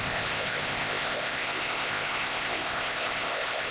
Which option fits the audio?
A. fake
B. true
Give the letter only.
A